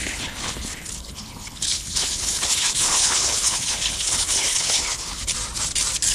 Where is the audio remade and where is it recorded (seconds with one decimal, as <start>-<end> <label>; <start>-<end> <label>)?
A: 0.0-5.3 remade; 5.3-6.1 recorded